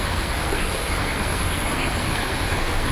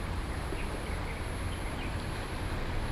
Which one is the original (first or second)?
second